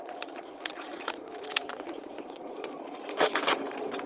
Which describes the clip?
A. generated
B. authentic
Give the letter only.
A